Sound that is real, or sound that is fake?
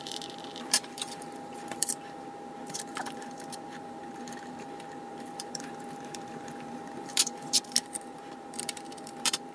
fake